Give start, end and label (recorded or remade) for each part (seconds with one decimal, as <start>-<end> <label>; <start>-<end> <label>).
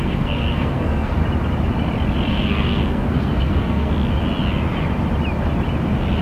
0.0-1.2 remade; 1.2-2.3 recorded; 2.3-3.9 remade; 3.9-6.2 recorded